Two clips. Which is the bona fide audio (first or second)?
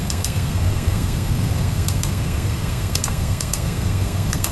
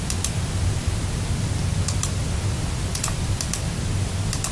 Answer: second